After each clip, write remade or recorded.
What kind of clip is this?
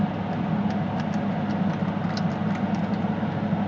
recorded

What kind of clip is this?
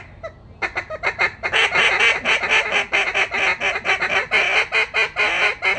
recorded